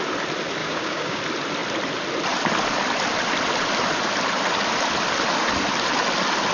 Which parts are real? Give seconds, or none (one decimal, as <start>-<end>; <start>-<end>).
0.0-0.6; 1.2-6.5